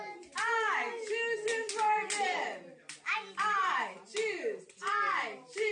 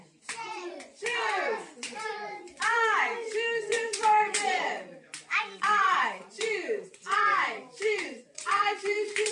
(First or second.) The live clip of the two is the first